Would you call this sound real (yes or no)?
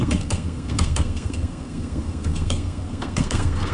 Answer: no